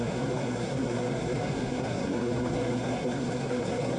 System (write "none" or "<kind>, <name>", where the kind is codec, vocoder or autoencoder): codec, SNAC